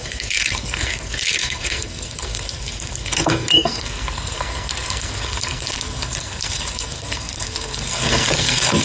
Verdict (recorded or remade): remade